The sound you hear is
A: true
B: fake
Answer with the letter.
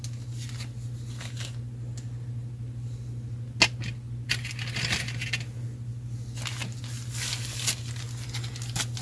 A